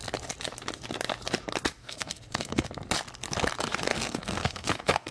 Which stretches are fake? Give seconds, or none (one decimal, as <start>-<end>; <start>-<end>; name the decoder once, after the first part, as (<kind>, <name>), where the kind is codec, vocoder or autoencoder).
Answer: 1.8-2.7 (codec, SNAC); 3.9-5.1